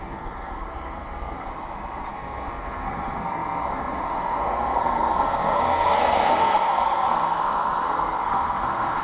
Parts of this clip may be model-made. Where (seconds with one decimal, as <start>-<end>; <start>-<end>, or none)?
0.0-1.5; 2.1-9.0

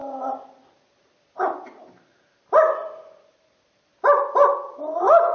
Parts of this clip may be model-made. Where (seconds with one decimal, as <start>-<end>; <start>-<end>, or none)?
none

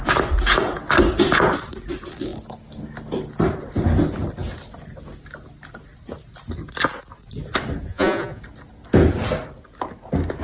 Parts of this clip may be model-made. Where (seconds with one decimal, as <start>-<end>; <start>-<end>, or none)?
7.9-8.4

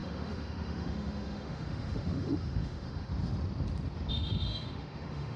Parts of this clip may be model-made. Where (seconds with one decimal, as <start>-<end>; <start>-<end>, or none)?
0.0-3.1; 4.1-5.4

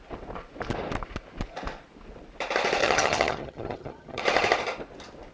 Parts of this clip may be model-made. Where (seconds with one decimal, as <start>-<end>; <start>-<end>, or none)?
2.8-4.2

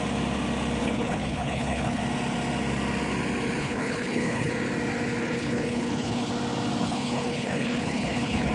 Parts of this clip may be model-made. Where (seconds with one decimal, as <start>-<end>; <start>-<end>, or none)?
0.8-2.0; 3.6-4.5; 5.2-6.3; 6.8-8.5